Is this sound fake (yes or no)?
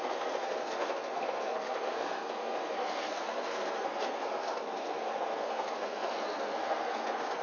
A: yes